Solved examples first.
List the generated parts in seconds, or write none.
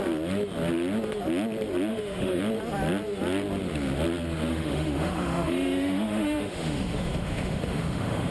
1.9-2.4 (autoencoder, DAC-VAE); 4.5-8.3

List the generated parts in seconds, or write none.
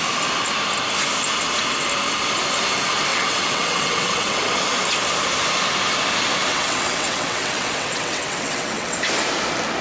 3.1-4.4 (vocoder, WaveNeXt); 6.5-9.0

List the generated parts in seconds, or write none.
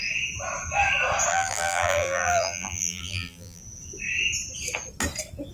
1.3-3.6 (vocoder, BigVGAN v2)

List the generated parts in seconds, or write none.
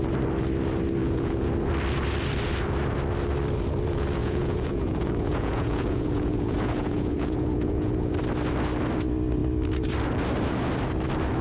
1.0-1.5 (vocoder, Vocos); 4.2-8.1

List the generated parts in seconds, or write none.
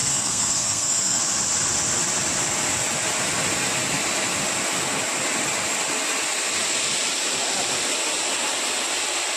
0.0-1.2 (codec, SNAC)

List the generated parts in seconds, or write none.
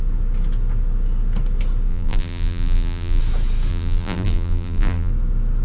1.9-3.2 (vocoder, BigVGAN v2); 3.7-5.1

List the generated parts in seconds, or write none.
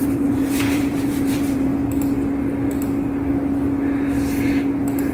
0.0-1.7 (vocoder, BigVGAN v2)